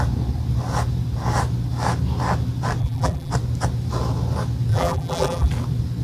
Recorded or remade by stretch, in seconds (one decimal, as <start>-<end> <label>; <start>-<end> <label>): 0.0-2.8 recorded; 2.8-3.3 remade; 3.3-4.7 recorded; 4.7-5.5 remade; 5.5-6.0 recorded